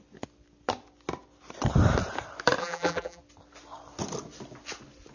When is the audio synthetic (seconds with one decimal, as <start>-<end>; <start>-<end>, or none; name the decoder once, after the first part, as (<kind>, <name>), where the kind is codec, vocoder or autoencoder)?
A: 2.6-3.2 (vocoder, BigVGAN v2)